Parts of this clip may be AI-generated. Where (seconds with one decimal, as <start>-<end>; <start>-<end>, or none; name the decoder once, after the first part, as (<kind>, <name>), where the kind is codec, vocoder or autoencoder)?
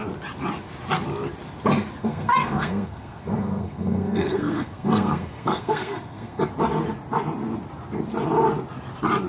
2.0-6.4 (codec, SNAC)